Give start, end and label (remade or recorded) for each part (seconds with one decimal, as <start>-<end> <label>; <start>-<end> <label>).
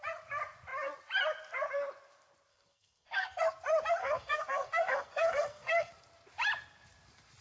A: 0.0-2.5 recorded; 2.5-3.4 remade; 3.4-4.0 recorded; 4.0-5.9 remade; 5.9-7.4 recorded